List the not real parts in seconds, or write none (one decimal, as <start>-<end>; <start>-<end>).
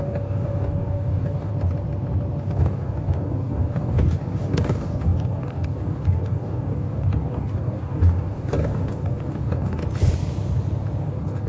0.0-1.5; 2.4-9.8; 11.0-11.5